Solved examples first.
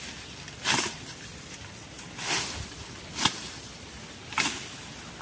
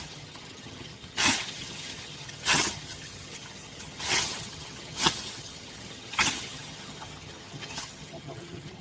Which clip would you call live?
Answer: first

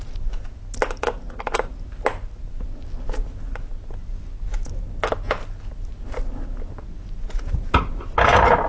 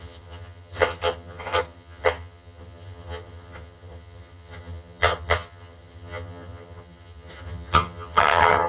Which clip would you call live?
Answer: first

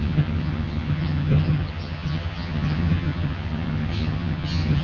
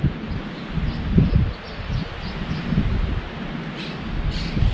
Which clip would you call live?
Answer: second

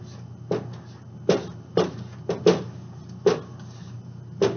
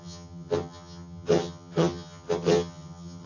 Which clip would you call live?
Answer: first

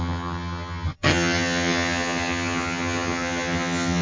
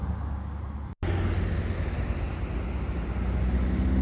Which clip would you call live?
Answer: second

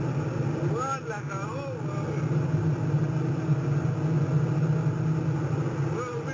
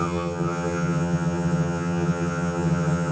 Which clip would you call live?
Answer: first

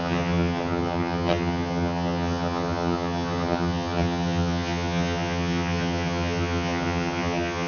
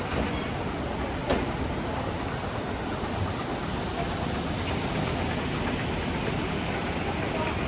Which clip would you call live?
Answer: second